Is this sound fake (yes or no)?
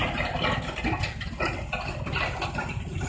yes